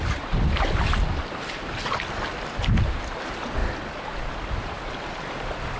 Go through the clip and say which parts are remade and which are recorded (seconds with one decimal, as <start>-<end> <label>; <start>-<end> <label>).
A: 0.0-1.8 remade; 1.8-2.8 recorded; 2.8-3.6 remade; 3.6-5.1 recorded; 5.1-5.8 remade